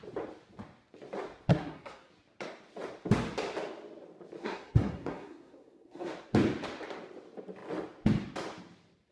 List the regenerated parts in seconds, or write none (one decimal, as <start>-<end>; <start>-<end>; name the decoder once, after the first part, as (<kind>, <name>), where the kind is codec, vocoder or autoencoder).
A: 1.5-2.1 (codec, SNAC); 4.4-6.1